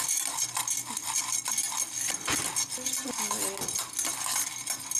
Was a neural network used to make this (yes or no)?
no